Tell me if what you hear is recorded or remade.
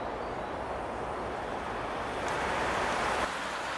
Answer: recorded